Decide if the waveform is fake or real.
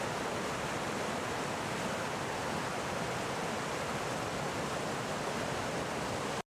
real